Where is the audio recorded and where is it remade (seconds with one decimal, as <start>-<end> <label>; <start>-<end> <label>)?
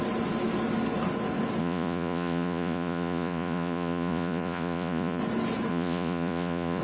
0.0-1.6 recorded; 1.6-5.2 remade; 5.2-5.7 recorded; 5.7-6.8 remade